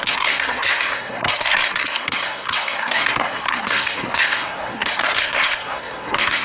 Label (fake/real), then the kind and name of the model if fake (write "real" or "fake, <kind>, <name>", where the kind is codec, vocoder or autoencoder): fake, codec, SNAC